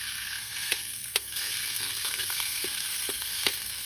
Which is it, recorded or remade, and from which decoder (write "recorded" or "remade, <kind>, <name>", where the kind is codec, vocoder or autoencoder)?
remade, codec, SNAC